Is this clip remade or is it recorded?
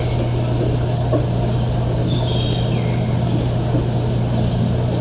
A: recorded